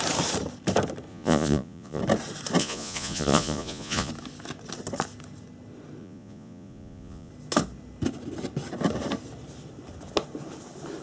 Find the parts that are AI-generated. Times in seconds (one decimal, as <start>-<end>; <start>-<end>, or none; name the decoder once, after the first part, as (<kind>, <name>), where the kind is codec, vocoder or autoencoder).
1.1-2.0 (vocoder, Vocos); 2.6-4.1; 6.0-7.3